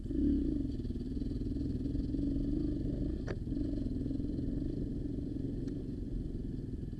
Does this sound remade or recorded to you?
recorded